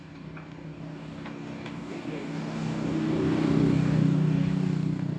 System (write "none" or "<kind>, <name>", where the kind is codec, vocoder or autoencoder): codec, DAC